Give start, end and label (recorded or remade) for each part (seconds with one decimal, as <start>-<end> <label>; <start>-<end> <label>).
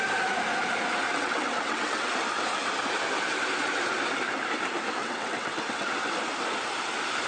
0.0-1.1 recorded; 1.1-2.1 remade; 2.1-5.0 recorded; 5.0-6.1 remade; 6.1-7.3 recorded